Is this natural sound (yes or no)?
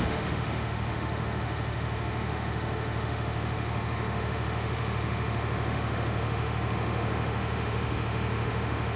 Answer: no